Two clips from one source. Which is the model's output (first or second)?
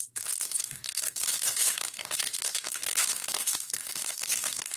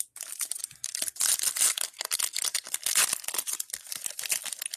first